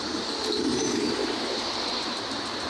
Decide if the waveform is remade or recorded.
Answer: remade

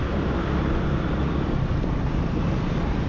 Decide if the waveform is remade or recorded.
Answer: remade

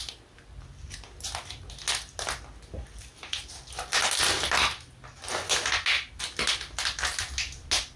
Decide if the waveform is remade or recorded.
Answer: recorded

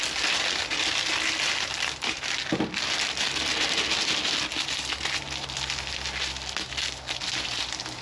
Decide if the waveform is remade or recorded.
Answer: recorded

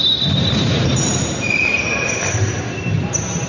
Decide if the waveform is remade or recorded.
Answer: remade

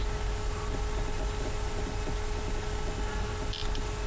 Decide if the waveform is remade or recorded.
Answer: recorded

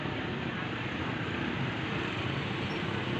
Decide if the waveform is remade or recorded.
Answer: remade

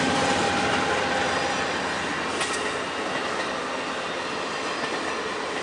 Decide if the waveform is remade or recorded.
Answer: recorded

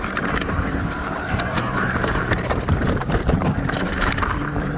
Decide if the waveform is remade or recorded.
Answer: remade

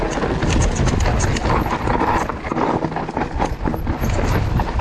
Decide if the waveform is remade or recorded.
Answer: recorded